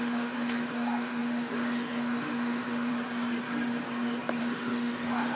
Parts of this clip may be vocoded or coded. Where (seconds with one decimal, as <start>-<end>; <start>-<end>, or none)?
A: 0.0-2.9; 4.4-5.3